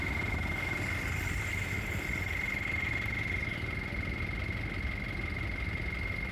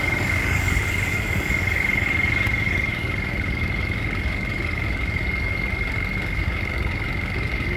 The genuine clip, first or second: first